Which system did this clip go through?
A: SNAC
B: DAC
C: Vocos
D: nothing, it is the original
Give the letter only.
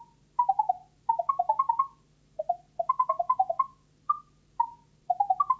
D